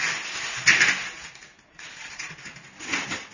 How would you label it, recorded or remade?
recorded